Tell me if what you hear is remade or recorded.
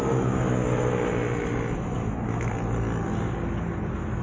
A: recorded